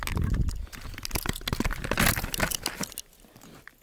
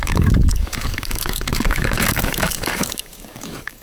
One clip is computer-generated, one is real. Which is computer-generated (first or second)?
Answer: second